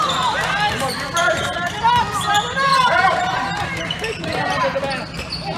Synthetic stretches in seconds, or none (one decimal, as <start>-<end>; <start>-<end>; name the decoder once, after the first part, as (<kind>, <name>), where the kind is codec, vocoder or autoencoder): 1.2-1.8 (vocoder, BigVGAN v2); 2.7-4.8